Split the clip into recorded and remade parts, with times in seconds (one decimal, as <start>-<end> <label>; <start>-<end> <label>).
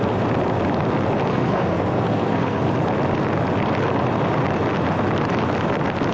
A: 0.0-1.3 recorded; 1.3-2.7 remade; 2.7-6.1 recorded